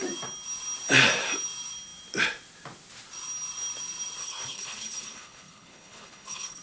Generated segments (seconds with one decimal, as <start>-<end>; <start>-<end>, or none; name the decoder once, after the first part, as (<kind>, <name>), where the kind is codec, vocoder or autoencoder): 4.2-6.6 (codec, HILCodec)